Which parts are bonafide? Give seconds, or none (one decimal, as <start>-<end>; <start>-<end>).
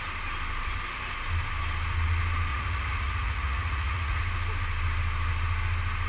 0.0-2.5; 4.2-6.1